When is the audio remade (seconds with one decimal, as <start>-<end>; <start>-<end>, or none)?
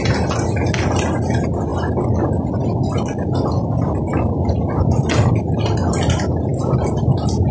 none